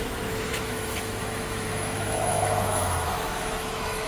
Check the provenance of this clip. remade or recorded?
remade